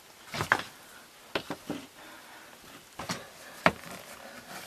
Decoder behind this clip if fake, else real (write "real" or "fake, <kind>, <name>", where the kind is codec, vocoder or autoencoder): real